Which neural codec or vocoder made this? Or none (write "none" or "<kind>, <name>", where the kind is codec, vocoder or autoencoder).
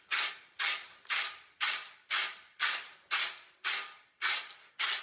none